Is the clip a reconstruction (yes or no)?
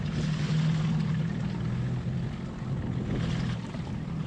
no